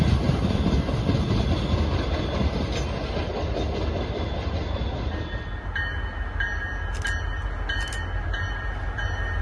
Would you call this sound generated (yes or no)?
no